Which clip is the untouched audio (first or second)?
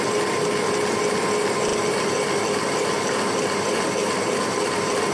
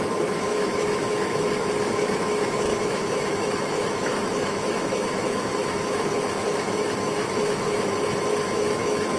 first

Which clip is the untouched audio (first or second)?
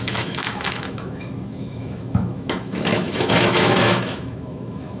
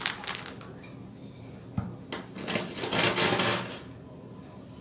second